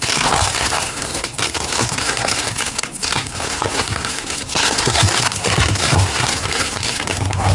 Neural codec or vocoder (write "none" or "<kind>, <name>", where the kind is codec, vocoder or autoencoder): codec, SNAC